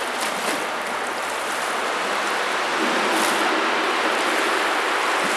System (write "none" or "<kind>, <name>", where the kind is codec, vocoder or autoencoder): none